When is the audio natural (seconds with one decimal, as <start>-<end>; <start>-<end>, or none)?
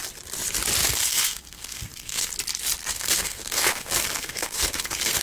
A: 0.0-0.8; 2.3-2.8